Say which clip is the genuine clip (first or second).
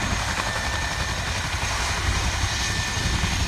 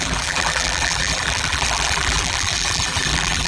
first